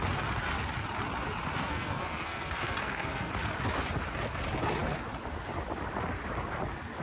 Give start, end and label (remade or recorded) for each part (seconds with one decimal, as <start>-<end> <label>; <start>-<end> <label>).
0.0-1.6 recorded; 1.6-3.3 remade; 3.3-7.0 recorded